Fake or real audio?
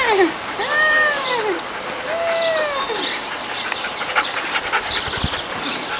real